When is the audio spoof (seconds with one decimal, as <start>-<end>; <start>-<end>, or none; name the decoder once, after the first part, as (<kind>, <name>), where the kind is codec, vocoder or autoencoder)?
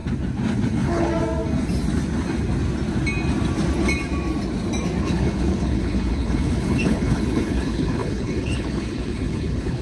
0.7-1.1 (codec, HILCodec); 5.0-9.8